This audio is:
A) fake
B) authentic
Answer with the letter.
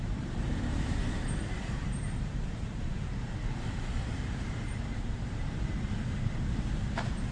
A